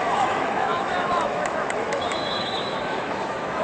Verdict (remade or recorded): remade